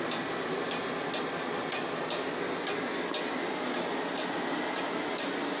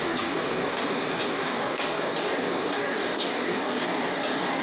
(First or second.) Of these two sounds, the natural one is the first